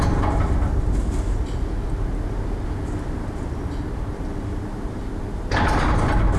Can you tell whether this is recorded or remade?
recorded